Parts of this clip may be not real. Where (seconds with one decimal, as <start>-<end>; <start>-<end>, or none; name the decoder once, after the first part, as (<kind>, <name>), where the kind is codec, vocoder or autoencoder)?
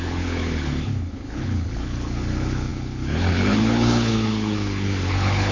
0.0-5.5 (codec, HILCodec)